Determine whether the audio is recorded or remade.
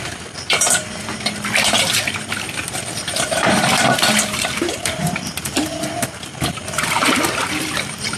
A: remade